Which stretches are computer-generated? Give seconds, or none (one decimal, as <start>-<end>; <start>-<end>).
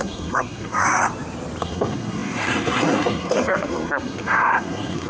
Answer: 0.0-1.1; 1.6-5.1